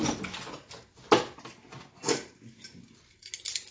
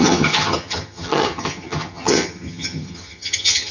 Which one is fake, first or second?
second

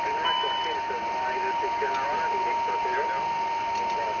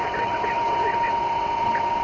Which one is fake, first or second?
second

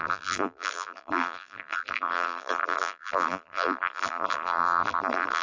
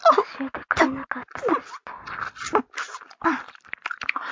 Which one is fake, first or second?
first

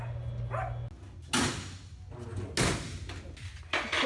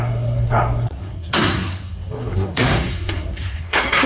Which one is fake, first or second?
second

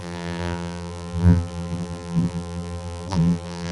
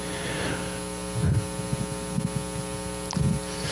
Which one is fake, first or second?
first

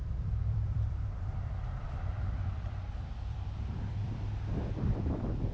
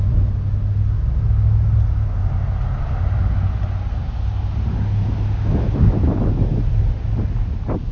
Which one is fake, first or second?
first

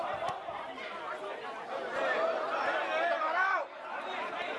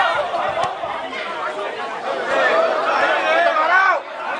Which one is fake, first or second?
first